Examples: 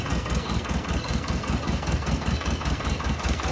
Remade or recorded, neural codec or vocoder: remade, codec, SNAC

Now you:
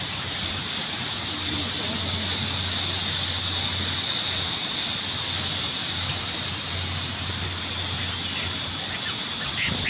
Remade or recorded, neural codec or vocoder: recorded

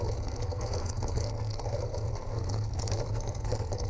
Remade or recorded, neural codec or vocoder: remade, codec, SNAC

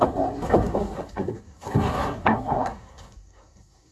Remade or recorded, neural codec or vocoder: remade, codec, SNAC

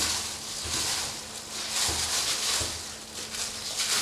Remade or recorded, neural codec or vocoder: recorded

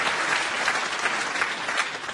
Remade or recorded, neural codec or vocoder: recorded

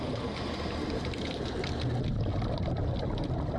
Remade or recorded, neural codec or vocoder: recorded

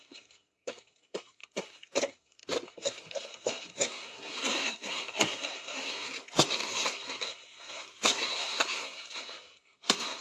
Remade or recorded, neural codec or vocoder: remade, codec, SNAC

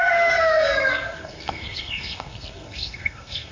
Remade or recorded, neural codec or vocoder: remade, codec, SNAC